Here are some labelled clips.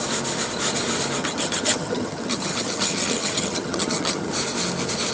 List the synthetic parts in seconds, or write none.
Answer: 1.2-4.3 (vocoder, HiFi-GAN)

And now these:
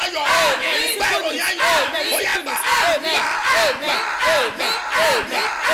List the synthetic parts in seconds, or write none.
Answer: 0.0-2.3 (vocoder, BigVGAN v2); 3.0-5.7

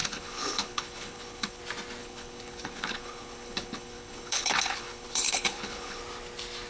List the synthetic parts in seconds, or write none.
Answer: 0.0-1.6 (codec, HILCodec); 2.0-6.0

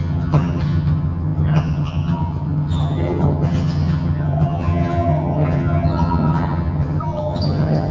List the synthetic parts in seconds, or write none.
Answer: 0.0-7.9 (vocoder, HiFi-GAN)

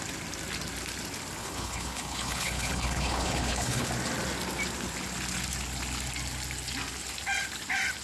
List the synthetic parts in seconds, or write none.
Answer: 1.4-3.9 (codec, HILCodec)